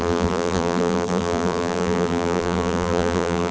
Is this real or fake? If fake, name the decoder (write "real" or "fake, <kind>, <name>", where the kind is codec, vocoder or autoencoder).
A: fake, vocoder, BigVGAN v2